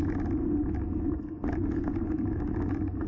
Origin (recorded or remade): recorded